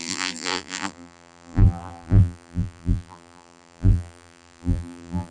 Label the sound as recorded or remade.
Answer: remade